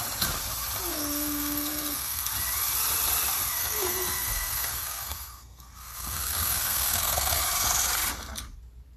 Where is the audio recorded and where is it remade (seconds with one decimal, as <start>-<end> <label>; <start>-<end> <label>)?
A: 0.0-0.9 recorded; 0.9-2.3 remade; 2.3-3.6 recorded; 3.6-7.4 remade; 7.4-9.0 recorded